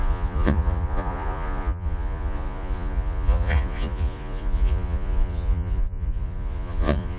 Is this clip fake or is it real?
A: fake